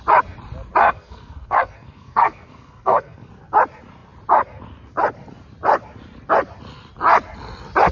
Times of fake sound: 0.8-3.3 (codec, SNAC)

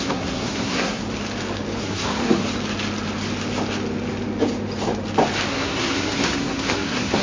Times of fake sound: 0.0-1.0 (codec, SNAC); 1.8-2.4; 5.5-7.2

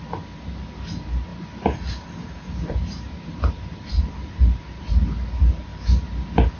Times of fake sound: 1.3-4.4 (vocoder, BigVGAN v2)